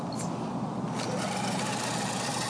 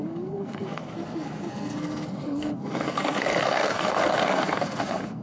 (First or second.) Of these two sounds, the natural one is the first